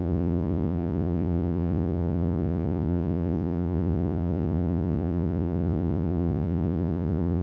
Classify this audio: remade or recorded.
remade